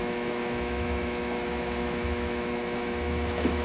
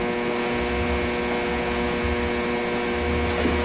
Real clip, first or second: second